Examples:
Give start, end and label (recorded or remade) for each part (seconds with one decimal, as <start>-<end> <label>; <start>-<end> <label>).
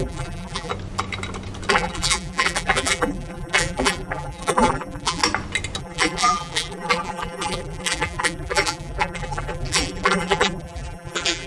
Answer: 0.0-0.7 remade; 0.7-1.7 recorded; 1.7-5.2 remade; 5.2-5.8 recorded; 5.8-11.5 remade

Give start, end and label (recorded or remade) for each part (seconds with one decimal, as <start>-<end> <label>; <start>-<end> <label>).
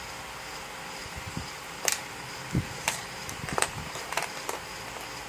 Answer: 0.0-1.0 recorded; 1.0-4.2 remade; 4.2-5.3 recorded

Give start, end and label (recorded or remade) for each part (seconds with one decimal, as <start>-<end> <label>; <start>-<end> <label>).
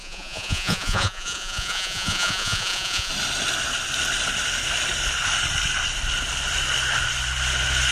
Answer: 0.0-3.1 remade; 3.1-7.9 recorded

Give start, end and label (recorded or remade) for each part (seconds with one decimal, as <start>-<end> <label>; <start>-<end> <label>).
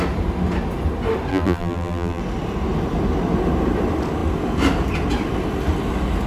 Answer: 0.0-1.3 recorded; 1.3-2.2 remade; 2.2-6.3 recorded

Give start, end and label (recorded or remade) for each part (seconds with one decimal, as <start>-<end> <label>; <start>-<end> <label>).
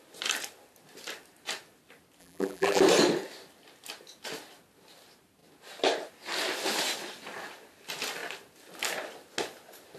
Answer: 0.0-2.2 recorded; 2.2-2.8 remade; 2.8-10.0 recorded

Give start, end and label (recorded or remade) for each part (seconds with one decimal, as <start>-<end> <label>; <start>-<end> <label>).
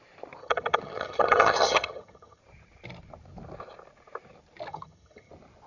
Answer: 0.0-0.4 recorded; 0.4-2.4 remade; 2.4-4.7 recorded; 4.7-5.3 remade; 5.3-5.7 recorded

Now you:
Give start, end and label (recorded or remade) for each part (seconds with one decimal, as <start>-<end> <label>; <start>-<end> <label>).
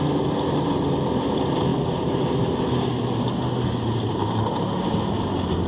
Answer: 0.0-5.7 recorded